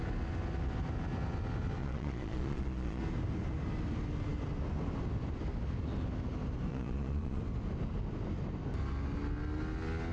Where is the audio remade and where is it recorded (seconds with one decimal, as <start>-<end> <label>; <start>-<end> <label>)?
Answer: 0.0-1.8 recorded; 1.8-3.0 remade; 3.0-6.7 recorded; 6.7-7.4 remade; 7.4-10.1 recorded